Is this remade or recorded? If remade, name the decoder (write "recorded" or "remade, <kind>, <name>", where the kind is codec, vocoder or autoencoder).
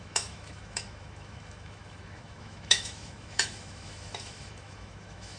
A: remade, autoencoder, DAC-VAE